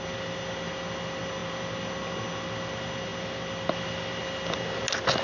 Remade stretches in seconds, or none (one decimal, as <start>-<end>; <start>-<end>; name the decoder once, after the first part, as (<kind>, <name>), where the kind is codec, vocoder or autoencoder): none